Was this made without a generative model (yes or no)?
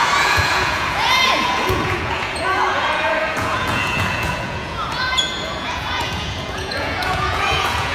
no